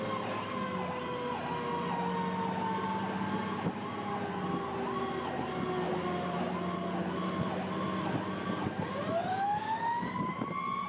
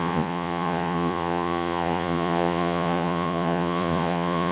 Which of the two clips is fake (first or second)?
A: second